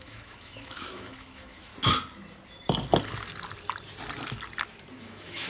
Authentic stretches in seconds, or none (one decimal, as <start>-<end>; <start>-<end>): 1.7-5.0